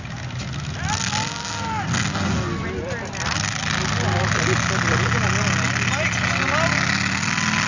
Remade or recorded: recorded